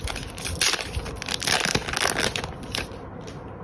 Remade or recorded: recorded